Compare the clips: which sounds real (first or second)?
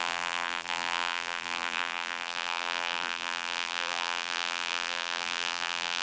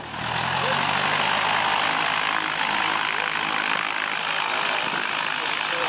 second